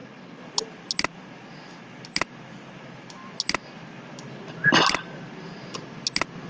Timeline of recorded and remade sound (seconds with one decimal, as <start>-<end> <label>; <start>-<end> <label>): 0.0-6.5 recorded